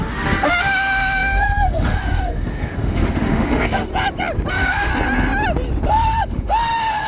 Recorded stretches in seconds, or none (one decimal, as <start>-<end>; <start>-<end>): 3.9-4.5; 4.9-5.9